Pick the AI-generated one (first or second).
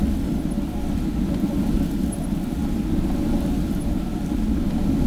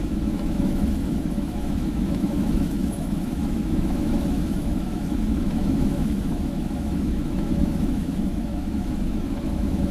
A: second